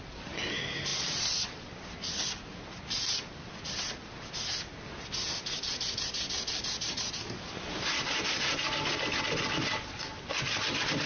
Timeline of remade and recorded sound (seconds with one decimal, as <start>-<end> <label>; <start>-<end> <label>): 0.0-11.1 recorded